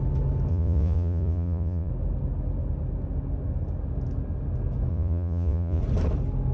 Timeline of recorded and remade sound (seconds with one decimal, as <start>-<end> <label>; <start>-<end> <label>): 0.0-0.5 recorded; 0.5-1.9 remade; 1.9-4.9 recorded; 4.9-5.8 remade; 5.8-6.5 recorded